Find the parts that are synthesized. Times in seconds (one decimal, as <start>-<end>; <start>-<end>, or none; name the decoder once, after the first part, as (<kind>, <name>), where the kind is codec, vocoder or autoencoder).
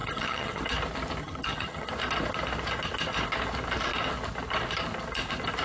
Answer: 0.0-0.6 (vocoder, HiFi-GAN); 1.2-1.9